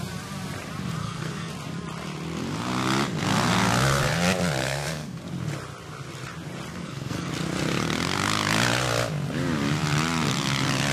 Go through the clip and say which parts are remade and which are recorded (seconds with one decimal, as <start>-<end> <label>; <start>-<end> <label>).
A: 0.0-1.0 recorded; 1.0-1.5 remade; 1.5-4.6 recorded; 4.6-5.2 remade; 5.2-6.7 recorded; 6.7-7.3 remade; 7.3-10.9 recorded